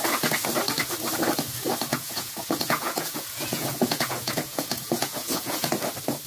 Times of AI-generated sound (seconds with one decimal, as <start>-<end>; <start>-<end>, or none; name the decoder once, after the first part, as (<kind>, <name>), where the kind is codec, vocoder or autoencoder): 1.9-5.7 (vocoder, Vocos)